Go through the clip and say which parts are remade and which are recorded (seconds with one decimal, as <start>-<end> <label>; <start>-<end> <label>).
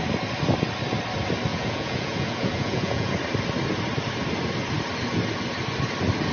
0.0-1.5 recorded; 1.5-3.1 remade; 3.1-6.3 recorded